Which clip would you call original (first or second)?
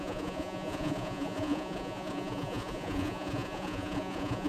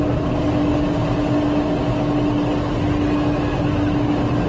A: second